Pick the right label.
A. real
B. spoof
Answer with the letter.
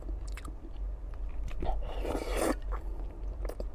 A